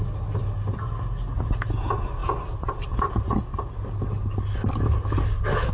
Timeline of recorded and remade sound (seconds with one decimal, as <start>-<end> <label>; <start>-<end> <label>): 0.0-5.7 recorded